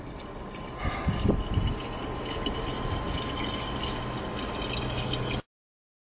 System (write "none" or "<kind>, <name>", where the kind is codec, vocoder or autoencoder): none